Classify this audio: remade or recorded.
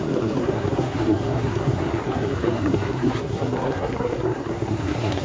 remade